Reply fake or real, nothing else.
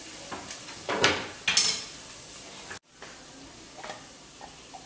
real